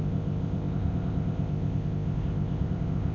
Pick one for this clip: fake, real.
fake